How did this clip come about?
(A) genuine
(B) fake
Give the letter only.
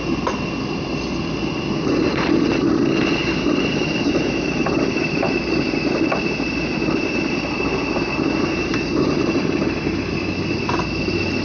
A